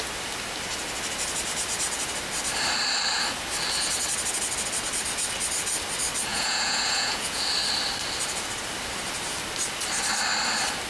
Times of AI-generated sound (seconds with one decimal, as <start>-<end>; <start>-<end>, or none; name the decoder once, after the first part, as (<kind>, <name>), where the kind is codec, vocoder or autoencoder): 6.3-7.4 (vocoder, Vocos)